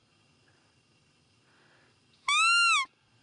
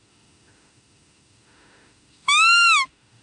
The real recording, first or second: first